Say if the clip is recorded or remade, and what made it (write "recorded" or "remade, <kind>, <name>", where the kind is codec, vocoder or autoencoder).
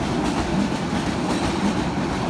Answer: recorded